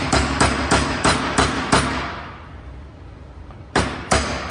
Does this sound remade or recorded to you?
remade